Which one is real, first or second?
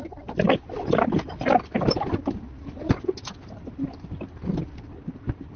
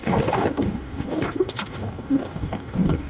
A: first